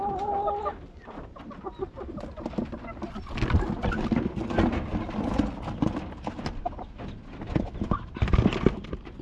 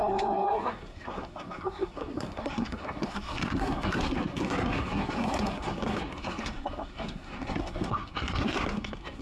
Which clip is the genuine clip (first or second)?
first